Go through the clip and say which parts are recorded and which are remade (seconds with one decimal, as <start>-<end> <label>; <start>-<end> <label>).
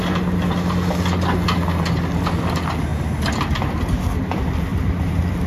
0.0-2.9 recorded; 2.9-3.6 remade; 3.6-4.7 recorded; 4.7-5.5 remade